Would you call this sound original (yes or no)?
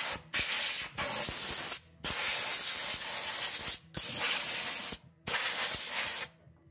yes